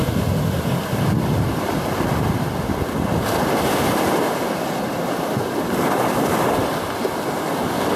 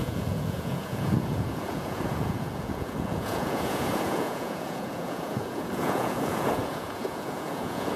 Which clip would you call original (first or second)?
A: first